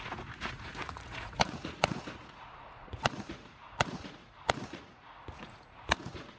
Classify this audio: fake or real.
fake